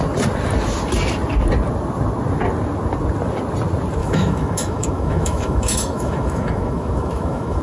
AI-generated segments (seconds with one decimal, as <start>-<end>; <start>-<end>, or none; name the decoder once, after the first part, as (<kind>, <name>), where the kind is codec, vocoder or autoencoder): 4.0-7.6 (autoencoder, DAC-VAE)